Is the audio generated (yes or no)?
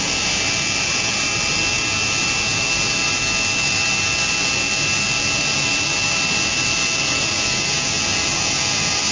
no